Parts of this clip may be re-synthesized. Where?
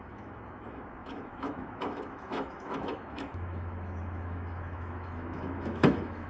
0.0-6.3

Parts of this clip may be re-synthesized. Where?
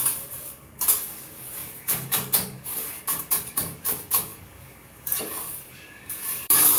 0.0-6.8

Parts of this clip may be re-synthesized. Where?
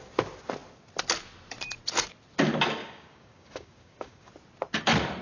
2.8-4.3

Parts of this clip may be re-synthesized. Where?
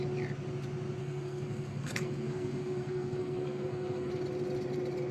1.0-4.1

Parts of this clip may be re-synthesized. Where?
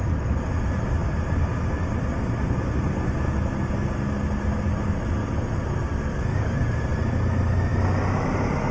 5.8-6.7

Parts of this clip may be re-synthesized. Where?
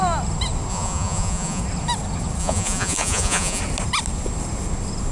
0.7-1.6; 2.4-3.6